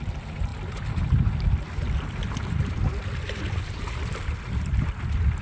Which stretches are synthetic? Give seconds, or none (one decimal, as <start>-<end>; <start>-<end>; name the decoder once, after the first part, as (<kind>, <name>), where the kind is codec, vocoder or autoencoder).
0.0-0.5 (vocoder, BigVGAN v2); 1.4-5.4